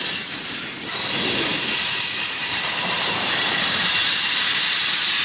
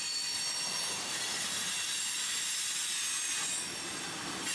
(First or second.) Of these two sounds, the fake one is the first